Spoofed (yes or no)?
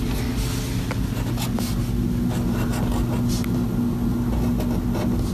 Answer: no